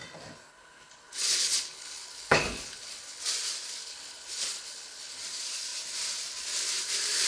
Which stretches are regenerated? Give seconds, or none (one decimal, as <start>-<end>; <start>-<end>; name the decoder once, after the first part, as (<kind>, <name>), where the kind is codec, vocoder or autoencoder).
0.5-3.2 (codec, HILCodec); 3.8-5.2